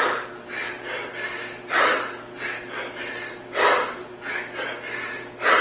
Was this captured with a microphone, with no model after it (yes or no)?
yes